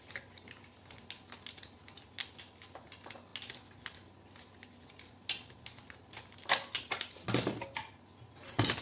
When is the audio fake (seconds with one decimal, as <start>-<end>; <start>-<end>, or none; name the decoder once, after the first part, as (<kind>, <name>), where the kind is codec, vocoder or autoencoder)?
none